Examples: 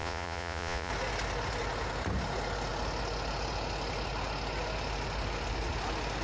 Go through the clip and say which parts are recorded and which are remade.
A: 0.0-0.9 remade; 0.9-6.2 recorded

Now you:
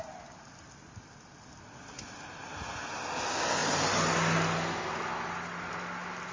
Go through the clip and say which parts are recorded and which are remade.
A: 0.0-6.3 recorded

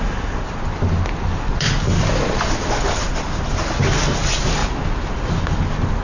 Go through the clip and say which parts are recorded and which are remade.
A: 0.0-6.0 recorded

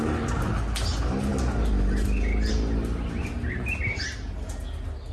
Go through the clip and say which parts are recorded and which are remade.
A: 0.0-5.1 recorded

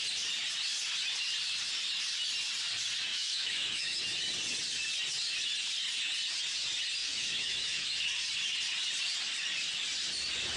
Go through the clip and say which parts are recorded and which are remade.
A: 0.0-3.1 recorded; 3.1-4.0 remade; 4.0-7.0 recorded; 7.0-8.0 remade; 8.0-10.6 recorded

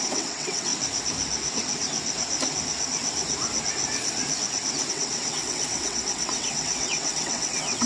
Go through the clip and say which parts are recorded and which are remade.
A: 0.0-0.7 remade; 0.7-4.9 recorded; 4.9-7.9 remade